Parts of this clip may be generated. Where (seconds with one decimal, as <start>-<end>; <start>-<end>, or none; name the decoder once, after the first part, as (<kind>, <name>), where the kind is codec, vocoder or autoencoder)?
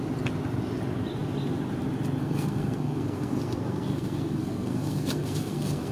2.2-5.9 (codec, SNAC)